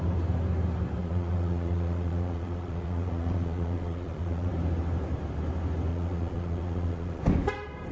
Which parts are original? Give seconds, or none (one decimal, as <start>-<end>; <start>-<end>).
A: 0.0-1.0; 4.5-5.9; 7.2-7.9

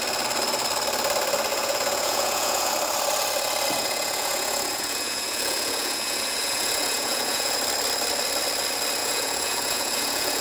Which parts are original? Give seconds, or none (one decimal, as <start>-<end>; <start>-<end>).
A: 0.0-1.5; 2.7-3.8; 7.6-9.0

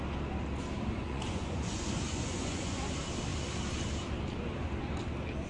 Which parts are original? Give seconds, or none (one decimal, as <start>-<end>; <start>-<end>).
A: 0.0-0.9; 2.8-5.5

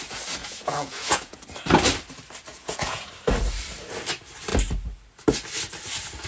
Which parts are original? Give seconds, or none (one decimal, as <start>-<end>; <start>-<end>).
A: 0.0-0.4; 1.4-2.5; 3.1-6.3

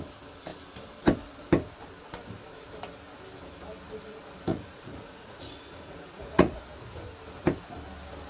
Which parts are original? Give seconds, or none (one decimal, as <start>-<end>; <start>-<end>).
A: 0.0-4.5; 6.6-8.3